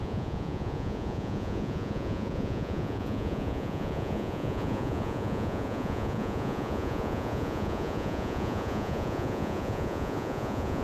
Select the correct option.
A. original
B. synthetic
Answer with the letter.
B